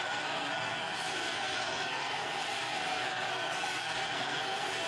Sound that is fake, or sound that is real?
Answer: fake